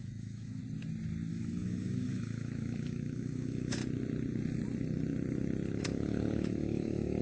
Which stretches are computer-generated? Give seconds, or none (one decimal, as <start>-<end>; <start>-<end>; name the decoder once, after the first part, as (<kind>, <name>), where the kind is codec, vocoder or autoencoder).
0.0-0.6 (autoencoder, DAC-VAE); 1.3-3.8; 5.8-7.2